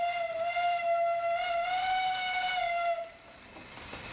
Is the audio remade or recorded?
recorded